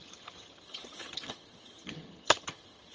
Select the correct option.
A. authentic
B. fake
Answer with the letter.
B